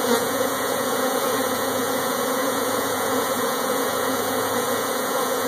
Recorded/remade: remade